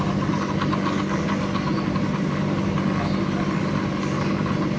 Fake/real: real